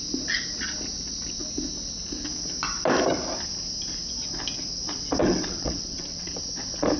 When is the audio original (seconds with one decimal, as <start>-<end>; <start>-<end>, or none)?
0.0-5.2; 6.4-7.0